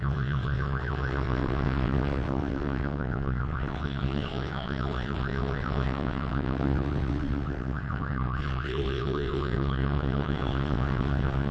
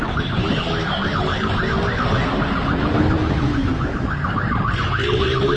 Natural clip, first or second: second